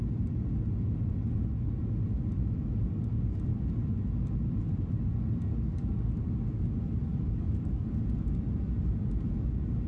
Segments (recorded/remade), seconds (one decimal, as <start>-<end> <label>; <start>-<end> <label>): 0.0-5.5 recorded; 5.5-6.1 remade; 6.1-7.1 recorded; 7.1-7.9 remade; 7.9-9.9 recorded